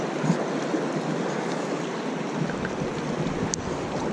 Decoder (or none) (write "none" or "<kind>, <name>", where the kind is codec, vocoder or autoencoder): none